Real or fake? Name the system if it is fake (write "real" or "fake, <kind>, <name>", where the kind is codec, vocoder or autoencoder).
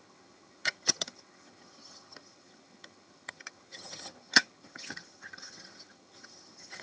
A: fake, vocoder, HiFi-GAN